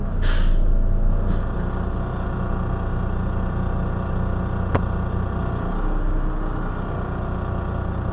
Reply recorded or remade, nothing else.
recorded